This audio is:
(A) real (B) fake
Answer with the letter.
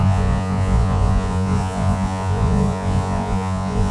B